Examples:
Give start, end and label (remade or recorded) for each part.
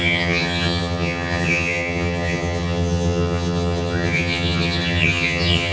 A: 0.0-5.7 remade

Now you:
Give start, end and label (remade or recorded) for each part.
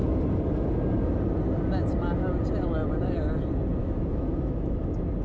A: 0.0-3.8 recorded; 3.8-4.8 remade; 4.8-5.2 recorded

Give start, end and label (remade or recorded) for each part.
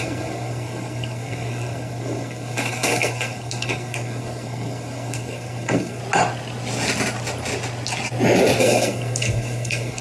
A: 0.0-6.0 remade; 6.0-8.6 recorded; 8.6-10.0 remade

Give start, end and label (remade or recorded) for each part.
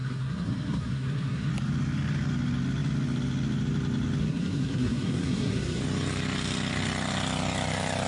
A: 0.0-1.5 remade; 1.5-4.2 recorded; 4.2-5.8 remade; 5.8-8.1 recorded